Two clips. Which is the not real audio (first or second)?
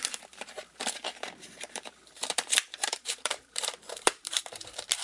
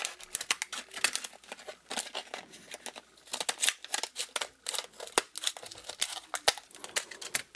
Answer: first